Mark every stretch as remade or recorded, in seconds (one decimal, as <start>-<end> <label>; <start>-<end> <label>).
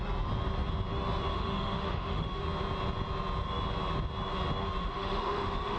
0.0-1.3 recorded; 1.3-2.4 remade; 2.4-4.8 recorded; 4.8-5.8 remade